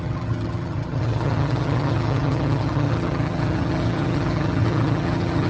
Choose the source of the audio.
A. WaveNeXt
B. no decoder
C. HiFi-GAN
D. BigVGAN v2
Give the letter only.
C